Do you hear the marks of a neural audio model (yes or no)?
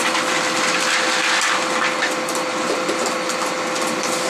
no